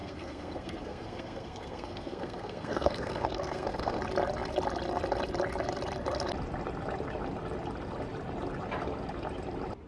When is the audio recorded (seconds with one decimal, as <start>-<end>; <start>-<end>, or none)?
4.0-9.9